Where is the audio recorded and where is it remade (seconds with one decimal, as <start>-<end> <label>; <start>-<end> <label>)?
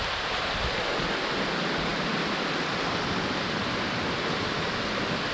0.0-5.3 recorded